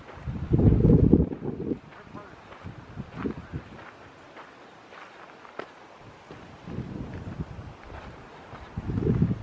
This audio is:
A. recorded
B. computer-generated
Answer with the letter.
A